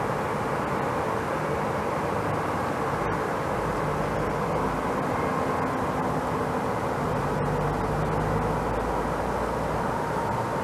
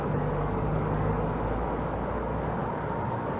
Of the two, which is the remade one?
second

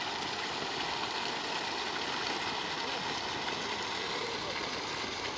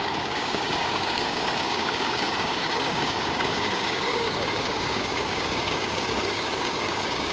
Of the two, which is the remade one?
second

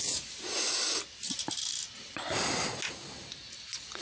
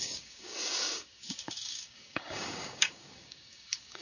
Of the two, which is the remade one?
second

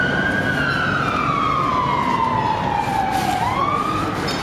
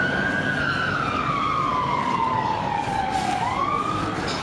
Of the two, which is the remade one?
second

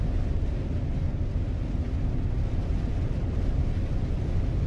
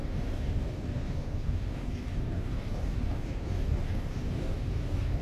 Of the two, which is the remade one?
second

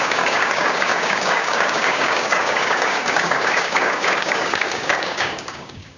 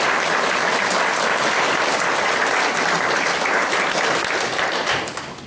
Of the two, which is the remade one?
first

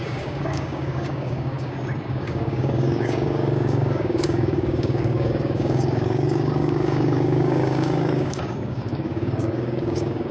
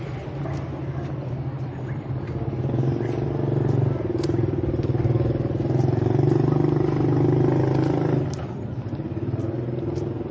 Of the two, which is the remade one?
first